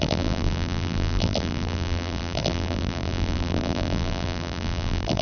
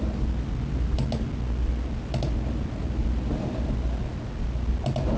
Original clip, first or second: second